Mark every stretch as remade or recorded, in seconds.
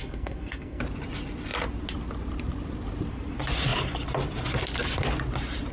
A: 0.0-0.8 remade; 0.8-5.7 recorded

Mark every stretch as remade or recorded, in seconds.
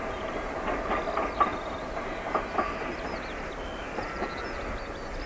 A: 0.0-5.3 recorded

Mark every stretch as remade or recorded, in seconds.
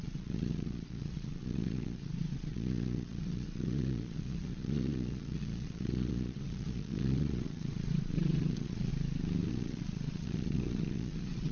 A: 0.0-8.9 remade; 8.9-9.5 recorded; 9.5-11.5 remade